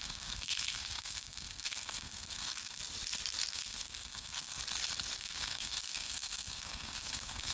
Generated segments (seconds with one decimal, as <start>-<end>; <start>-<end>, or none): 0.0-2.8; 3.5-4.6; 5.2-7.5

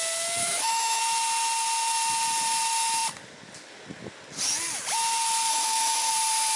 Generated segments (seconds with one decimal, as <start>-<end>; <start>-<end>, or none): 0.4-1.0; 5.5-6.1